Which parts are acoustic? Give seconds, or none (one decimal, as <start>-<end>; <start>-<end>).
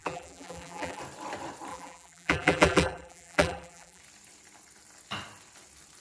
1.0-1.7; 4.0-6.0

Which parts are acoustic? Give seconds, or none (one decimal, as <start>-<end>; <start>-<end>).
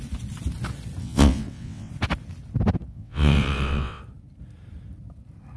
0.0-1.0; 1.9-2.9; 4.0-5.6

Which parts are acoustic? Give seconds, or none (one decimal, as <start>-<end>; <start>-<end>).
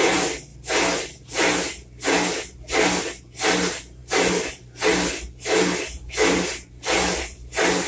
0.0-7.9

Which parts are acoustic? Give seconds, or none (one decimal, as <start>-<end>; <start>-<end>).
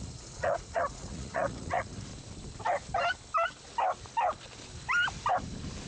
2.1-5.9